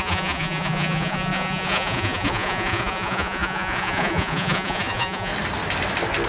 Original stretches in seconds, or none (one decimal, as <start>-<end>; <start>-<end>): 5.3-6.3